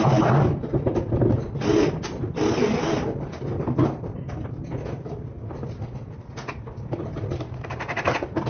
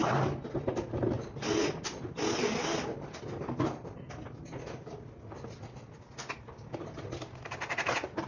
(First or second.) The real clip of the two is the second